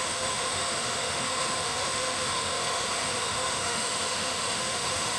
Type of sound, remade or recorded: remade